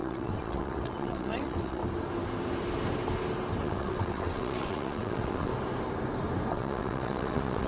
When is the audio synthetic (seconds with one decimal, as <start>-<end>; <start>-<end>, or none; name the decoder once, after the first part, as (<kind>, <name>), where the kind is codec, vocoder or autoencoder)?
0.0-1.8 (vocoder, WaveNeXt); 3.6-5.5; 6.5-7.7